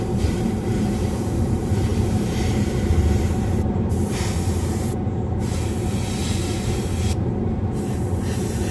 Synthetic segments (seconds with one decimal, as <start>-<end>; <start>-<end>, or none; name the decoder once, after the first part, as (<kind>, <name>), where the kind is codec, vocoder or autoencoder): 0.0-8.7 (vocoder, BigVGAN v2)